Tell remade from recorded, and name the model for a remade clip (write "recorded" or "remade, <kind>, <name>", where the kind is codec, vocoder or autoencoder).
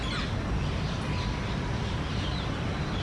recorded